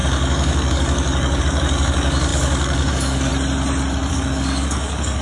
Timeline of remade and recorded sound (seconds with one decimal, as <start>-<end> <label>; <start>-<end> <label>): 0.0-3.3 remade; 3.3-4.1 recorded; 4.1-5.2 remade